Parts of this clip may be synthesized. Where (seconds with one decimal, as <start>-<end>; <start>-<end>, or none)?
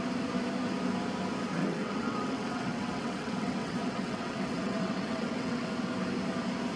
1.6-5.7